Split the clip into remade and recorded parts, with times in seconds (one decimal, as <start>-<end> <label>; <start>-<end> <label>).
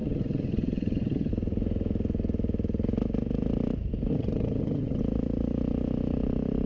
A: 0.0-1.3 remade; 1.3-4.1 recorded; 4.1-5.0 remade; 5.0-6.7 recorded